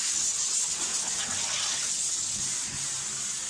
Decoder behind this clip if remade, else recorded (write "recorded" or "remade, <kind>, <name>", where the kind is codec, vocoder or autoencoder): recorded